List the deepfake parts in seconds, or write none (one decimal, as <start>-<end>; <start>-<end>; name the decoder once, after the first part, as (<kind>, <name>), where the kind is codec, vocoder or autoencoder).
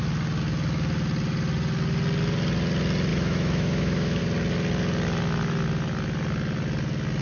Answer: 3.1-4.2 (autoencoder, DAC-VAE)